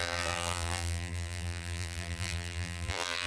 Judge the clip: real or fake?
fake